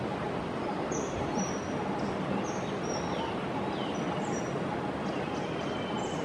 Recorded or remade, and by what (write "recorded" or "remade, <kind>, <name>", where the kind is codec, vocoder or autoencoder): recorded